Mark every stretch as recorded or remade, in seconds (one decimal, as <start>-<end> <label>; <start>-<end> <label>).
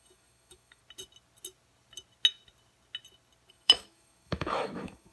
0.0-0.8 remade; 0.8-3.5 recorded; 3.5-5.1 remade